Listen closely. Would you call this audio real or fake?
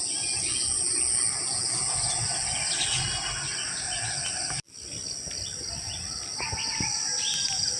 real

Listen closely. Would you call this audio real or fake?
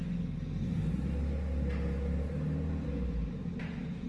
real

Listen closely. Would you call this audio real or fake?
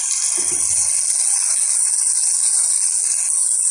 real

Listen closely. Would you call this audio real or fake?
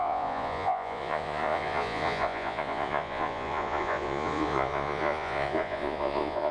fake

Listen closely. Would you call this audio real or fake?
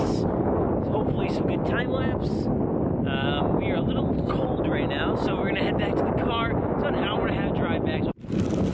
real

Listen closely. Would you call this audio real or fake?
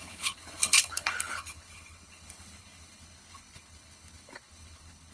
fake